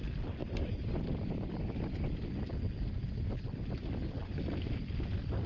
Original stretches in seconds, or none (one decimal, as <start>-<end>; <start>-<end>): 0.0-5.5